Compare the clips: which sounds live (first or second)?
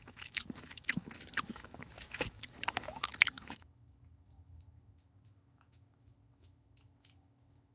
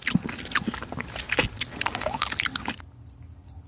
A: second